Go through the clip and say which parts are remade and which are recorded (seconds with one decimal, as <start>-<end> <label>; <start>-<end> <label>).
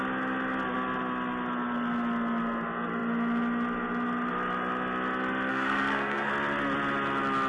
0.0-5.5 recorded; 5.5-6.3 remade; 6.3-7.5 recorded